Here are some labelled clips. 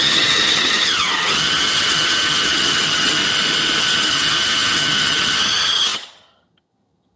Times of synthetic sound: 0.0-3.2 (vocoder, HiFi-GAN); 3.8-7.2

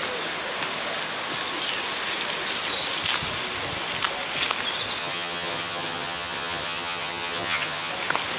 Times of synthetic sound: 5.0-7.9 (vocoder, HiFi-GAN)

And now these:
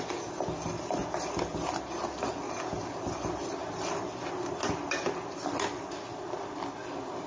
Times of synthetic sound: none